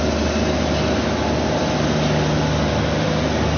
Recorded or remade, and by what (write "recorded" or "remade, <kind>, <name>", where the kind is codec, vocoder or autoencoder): recorded